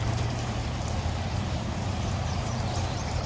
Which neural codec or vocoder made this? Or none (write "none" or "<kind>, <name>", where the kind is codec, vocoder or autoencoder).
vocoder, BigVGAN v2